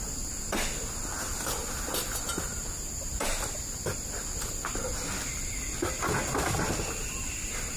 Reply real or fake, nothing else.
real